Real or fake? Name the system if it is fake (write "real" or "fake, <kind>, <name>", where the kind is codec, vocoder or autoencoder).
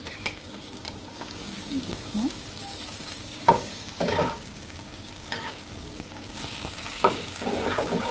fake, codec, DAC